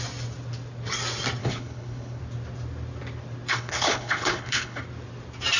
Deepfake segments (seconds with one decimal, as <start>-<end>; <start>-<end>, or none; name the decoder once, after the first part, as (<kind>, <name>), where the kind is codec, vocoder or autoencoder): 1.4-2.2 (codec, HILCodec); 3.5-4.8